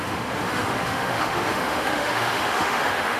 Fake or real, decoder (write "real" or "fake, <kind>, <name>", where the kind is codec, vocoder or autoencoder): fake, autoencoder, DAC-VAE